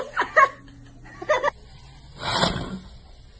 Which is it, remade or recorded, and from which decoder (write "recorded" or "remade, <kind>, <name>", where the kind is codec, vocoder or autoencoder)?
recorded